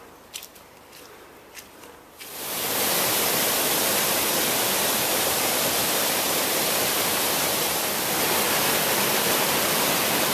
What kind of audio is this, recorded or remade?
remade